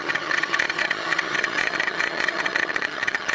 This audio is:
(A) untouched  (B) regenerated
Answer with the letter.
B